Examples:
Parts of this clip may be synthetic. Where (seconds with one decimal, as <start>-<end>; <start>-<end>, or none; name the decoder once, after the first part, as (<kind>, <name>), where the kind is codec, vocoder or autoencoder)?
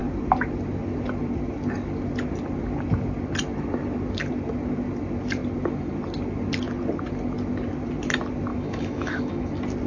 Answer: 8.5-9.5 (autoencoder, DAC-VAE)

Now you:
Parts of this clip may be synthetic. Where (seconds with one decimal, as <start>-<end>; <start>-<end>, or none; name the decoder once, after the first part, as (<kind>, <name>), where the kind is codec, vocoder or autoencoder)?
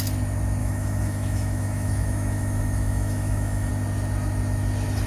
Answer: 0.6-3.7 (autoencoder, DAC-VAE)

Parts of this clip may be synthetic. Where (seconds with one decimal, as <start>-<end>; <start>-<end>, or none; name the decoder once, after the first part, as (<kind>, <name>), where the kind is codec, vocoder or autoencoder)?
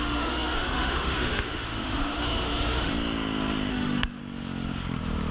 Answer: 0.0-2.9 (autoencoder, DAC-VAE); 3.7-4.2